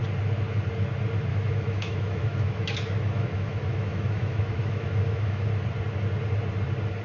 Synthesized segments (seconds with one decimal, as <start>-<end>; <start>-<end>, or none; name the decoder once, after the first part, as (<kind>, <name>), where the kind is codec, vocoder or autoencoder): 1.3-5.5 (autoencoder, DAC-VAE)